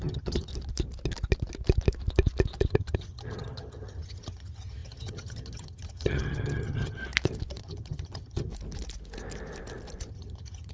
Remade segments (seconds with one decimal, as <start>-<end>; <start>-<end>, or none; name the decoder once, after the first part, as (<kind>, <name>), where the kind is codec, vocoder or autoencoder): 0.0-0.5 (vocoder, HiFi-GAN); 2.7-7.0; 7.6-8.5; 10.1-10.7